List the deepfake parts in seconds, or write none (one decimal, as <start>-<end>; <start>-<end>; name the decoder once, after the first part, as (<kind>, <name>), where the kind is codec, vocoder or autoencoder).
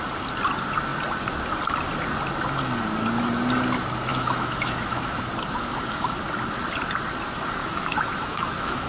4.1-5.2 (autoencoder, DAC-VAE); 7.6-8.9